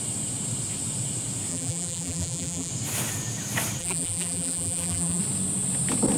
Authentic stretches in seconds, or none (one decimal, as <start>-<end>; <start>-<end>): 0.0-1.5; 2.7-3.8; 5.2-6.2

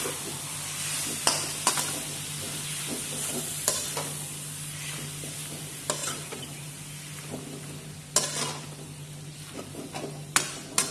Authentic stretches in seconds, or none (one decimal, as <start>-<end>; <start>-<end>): 0.0-6.0; 6.6-10.9

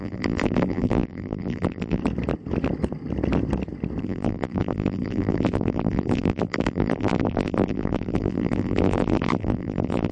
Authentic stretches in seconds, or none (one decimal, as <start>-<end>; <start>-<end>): 2.0-4.0

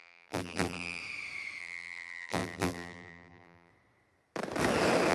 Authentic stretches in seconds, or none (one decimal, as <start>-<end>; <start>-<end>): 1.0-1.6; 3.7-5.1

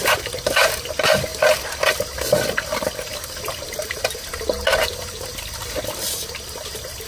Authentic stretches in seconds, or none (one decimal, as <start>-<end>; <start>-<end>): 0.0-7.1

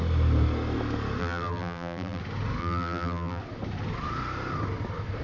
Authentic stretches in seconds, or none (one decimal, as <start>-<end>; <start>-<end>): 0.0-1.2; 2.2-2.6; 3.4-5.2

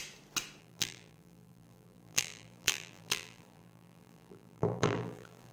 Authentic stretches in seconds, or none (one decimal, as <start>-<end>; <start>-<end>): 0.0-0.6

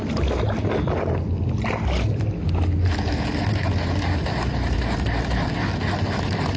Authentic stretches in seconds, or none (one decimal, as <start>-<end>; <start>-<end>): 0.0-4.3; 5.5-6.6